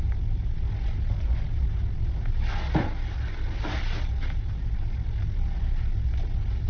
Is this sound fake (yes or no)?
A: no